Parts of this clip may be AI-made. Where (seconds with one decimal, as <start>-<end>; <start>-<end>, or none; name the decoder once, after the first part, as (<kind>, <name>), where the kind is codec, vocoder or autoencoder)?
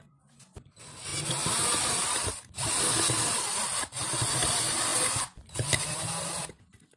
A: none